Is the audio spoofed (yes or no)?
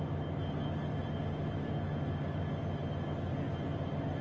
no